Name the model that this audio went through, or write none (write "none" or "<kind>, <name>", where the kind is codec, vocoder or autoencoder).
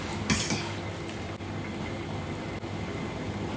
none